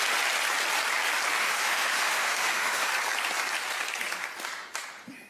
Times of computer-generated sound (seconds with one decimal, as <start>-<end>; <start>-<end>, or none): 1.4-2.9